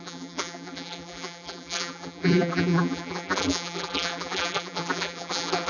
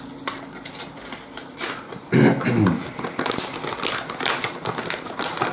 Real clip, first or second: second